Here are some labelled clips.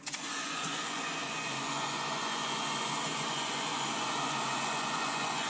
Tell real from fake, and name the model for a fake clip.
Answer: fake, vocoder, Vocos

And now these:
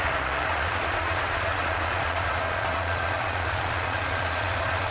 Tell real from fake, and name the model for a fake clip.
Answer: fake, vocoder, Vocos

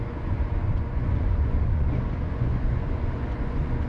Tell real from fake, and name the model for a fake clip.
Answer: fake, vocoder, Vocos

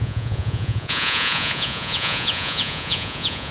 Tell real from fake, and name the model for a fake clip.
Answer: fake, vocoder, Vocos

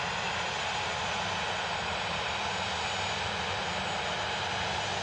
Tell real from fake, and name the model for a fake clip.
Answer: real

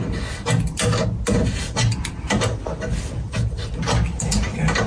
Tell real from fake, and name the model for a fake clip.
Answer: real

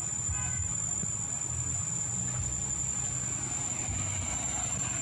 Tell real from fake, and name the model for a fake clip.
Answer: real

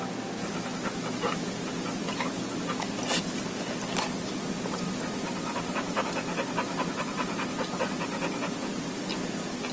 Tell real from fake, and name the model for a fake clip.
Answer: real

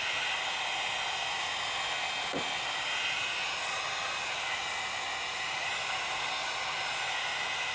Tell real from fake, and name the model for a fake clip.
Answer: real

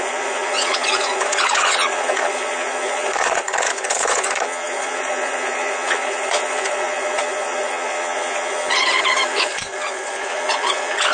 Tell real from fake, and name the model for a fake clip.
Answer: fake, vocoder, Vocos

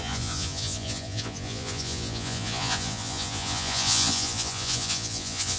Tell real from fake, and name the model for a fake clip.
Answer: fake, vocoder, Vocos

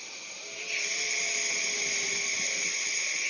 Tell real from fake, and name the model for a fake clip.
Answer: real